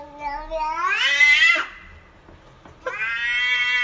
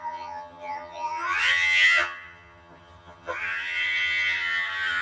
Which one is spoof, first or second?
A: second